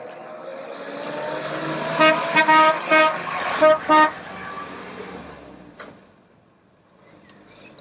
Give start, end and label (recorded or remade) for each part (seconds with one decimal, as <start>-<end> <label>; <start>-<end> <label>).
0.0-7.8 recorded